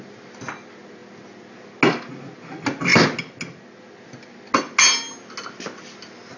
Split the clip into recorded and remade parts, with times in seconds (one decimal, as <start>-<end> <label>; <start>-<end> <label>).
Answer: 0.0-6.4 recorded